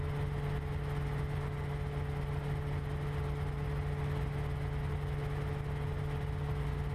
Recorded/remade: recorded